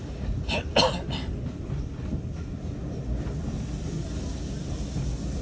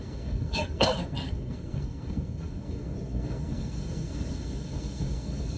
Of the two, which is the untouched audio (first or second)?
first